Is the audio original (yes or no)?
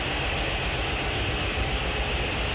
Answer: yes